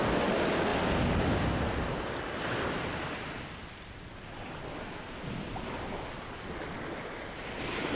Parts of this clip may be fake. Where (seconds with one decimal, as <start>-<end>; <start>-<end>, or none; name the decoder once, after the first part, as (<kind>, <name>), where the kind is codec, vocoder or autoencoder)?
none